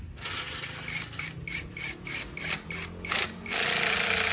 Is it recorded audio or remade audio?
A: recorded